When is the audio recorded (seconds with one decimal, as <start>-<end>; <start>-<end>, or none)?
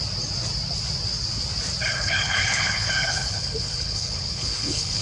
0.0-1.9